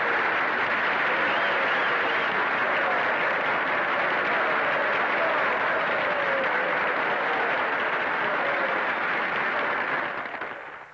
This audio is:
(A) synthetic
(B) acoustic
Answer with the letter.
B